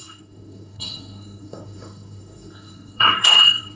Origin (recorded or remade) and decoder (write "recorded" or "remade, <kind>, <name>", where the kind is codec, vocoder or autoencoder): remade, codec, SNAC